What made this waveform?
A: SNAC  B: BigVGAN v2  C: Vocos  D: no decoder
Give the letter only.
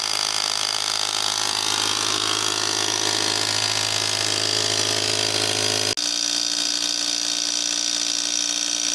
D